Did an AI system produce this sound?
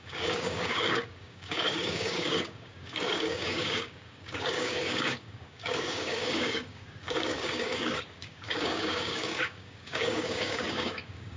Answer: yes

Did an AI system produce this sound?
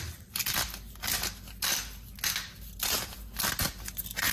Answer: no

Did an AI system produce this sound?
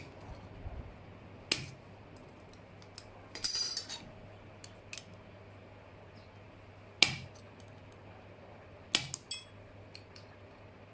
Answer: no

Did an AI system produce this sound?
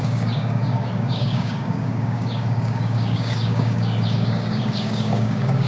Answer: yes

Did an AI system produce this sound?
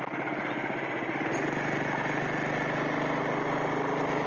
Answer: no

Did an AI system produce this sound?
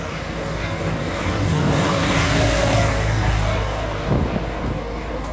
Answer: yes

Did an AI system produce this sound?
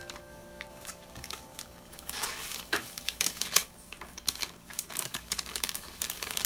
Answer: yes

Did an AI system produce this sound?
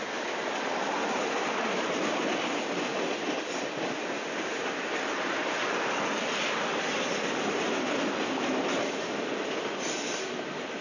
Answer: no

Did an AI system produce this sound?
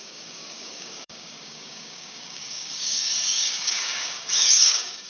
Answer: yes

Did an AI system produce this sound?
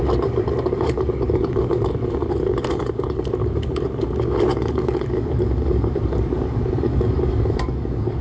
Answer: yes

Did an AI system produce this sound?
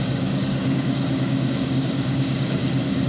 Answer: yes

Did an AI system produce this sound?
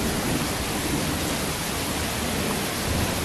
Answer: no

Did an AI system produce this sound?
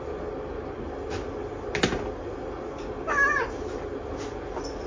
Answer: no